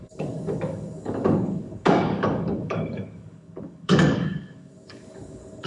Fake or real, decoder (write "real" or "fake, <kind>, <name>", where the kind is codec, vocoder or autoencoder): fake, codec, DAC